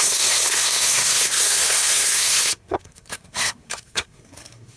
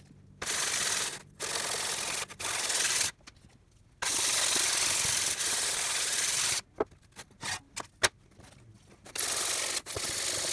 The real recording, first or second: second